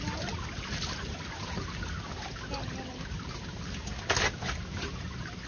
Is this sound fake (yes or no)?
no